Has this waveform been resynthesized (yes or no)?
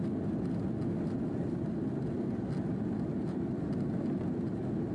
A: no